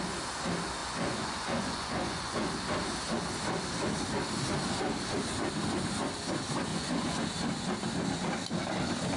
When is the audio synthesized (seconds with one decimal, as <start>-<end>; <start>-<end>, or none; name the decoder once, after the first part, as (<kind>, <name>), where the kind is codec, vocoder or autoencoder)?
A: 0.8-2.5 (vocoder, Vocos); 6.7-7.2